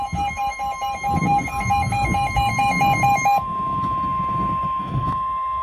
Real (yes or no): no